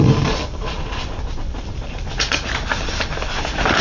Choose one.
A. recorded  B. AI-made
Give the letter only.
B